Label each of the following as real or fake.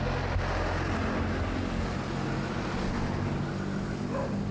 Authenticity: real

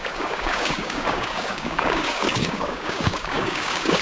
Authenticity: fake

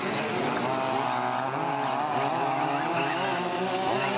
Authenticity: real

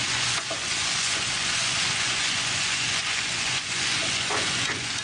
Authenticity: fake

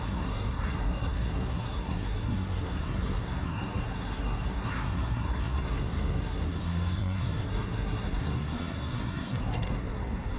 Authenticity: fake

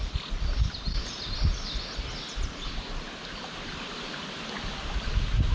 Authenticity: real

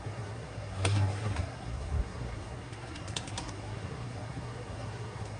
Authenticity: fake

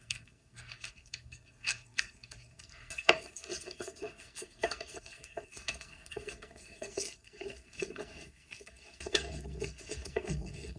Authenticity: fake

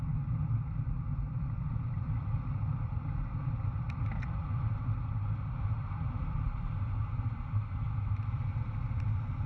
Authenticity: fake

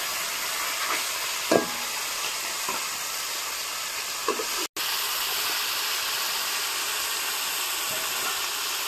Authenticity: real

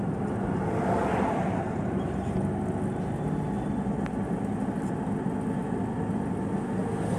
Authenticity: real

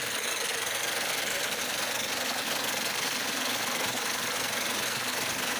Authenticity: fake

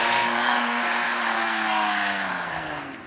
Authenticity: fake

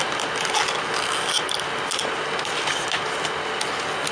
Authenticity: real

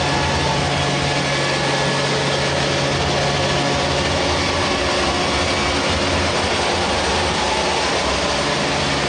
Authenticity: real